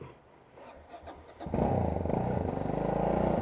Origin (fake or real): real